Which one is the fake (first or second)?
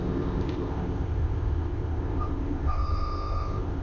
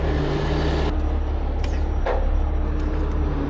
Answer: first